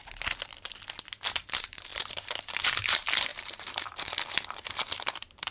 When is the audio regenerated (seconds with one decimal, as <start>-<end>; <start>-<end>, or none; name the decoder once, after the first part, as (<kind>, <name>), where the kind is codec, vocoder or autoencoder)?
1.4-5.5 (vocoder, BigVGAN v2)